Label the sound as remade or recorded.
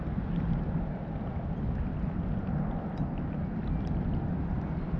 recorded